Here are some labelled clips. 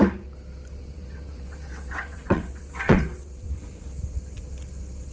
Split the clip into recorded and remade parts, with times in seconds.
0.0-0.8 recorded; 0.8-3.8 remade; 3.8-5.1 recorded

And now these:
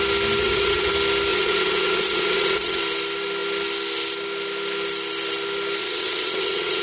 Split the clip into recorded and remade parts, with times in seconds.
0.0-0.4 recorded; 0.4-0.9 remade; 0.9-1.3 recorded; 1.3-2.8 remade; 2.8-5.8 recorded; 5.8-6.8 remade

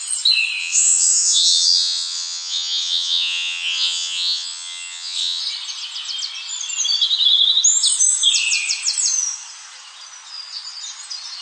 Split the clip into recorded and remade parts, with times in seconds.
0.0-0.6 recorded; 0.6-5.4 remade; 5.4-11.4 recorded

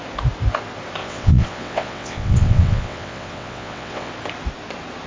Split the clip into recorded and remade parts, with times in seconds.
0.0-1.0 recorded; 1.0-4.1 remade; 4.1-5.1 recorded